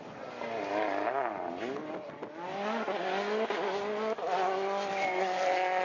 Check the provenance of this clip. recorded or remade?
recorded